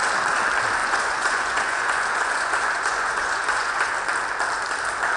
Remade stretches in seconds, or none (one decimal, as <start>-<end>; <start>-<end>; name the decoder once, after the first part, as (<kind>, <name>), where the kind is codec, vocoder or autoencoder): 0.8-3.9 (vocoder, Vocos)